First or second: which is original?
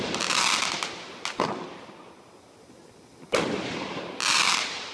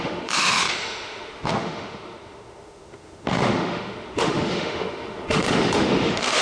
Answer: first